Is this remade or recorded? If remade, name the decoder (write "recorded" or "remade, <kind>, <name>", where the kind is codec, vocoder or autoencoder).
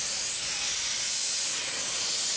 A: recorded